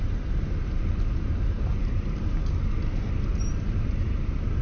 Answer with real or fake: fake